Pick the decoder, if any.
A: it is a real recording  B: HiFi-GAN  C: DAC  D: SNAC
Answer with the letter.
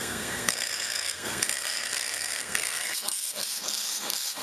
D